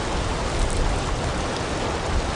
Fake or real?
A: real